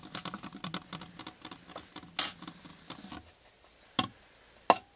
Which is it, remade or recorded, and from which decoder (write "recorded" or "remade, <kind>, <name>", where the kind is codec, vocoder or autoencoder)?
recorded